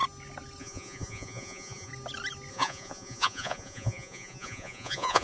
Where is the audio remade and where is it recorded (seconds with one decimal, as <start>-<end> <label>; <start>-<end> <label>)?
0.0-0.6 recorded; 0.6-1.9 remade; 1.9-2.5 recorded; 2.5-5.2 remade